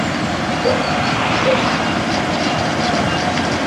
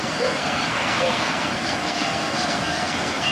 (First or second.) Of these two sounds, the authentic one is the first